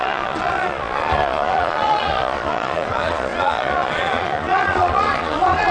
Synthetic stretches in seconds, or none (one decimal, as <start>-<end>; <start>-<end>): 0.0-5.7